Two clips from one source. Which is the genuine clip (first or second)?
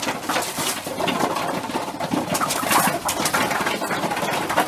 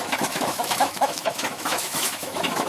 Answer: first